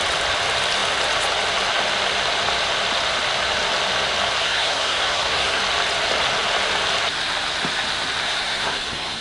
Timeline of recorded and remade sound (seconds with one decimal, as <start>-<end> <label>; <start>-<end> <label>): 0.0-4.4 recorded; 4.4-5.6 remade; 5.6-8.2 recorded; 8.2-9.2 remade